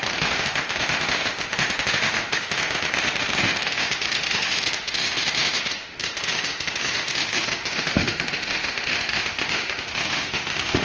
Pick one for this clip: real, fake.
fake